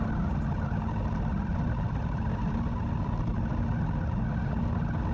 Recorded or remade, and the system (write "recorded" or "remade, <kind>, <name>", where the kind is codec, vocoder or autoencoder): recorded